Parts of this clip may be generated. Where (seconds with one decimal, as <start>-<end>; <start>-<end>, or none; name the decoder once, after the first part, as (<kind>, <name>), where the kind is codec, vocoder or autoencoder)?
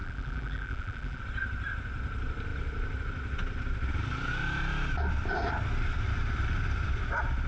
0.0-1.2 (vocoder, BigVGAN v2)